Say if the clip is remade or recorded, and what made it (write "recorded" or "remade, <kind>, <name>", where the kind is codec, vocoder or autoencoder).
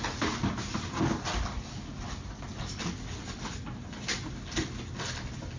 recorded